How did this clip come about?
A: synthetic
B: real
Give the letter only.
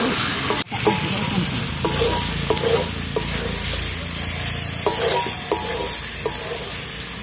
B